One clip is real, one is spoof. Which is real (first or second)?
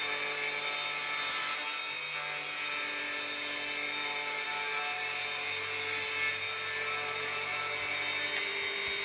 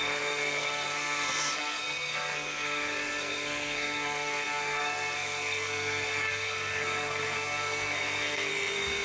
first